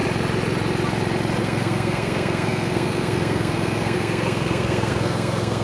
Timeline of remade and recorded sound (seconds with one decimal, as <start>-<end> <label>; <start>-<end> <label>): 0.0-1.4 recorded; 1.4-5.6 remade